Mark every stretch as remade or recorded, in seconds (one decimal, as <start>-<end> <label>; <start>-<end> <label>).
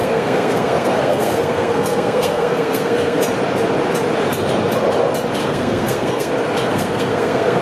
0.0-3.2 remade; 3.2-5.4 recorded; 5.4-6.3 remade; 6.3-6.7 recorded; 6.7-7.6 remade